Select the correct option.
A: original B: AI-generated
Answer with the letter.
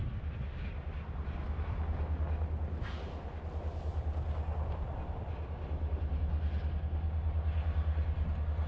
A